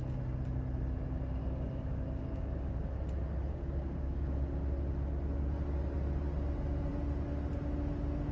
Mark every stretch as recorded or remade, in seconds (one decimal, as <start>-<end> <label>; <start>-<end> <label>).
0.0-1.4 recorded; 1.4-2.9 remade; 2.9-3.5 recorded; 3.5-4.3 remade; 4.3-8.3 recorded